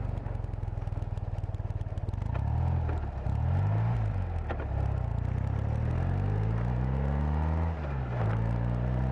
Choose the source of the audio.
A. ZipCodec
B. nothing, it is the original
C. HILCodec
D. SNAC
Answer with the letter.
B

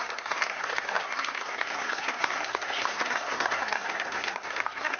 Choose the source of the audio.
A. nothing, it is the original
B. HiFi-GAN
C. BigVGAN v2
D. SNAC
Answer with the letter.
D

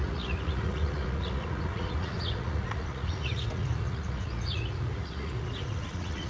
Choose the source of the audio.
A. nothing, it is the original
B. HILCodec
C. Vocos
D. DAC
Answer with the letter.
C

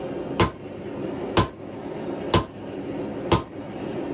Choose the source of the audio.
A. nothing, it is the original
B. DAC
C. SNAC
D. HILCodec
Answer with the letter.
A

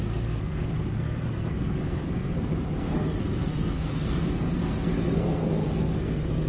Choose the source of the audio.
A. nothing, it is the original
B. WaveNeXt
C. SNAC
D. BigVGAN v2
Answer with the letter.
C